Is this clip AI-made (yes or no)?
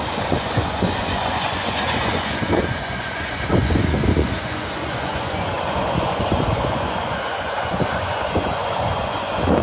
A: yes